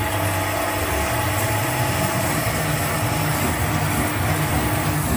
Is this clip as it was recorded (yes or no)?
yes